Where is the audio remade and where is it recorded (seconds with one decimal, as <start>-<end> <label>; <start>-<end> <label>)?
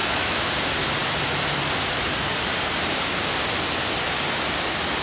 0.0-0.5 remade; 0.5-5.0 recorded